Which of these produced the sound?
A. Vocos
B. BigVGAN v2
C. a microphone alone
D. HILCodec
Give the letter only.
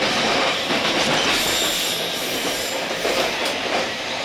B